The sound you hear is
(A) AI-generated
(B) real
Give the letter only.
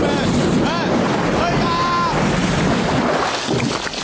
B